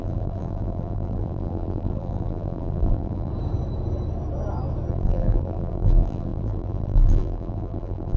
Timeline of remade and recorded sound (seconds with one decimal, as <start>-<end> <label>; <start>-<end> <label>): 0.0-3.3 remade; 3.3-4.9 recorded; 4.9-8.2 remade